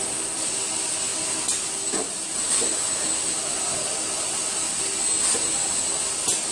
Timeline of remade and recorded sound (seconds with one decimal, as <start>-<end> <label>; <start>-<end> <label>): 0.0-6.5 recorded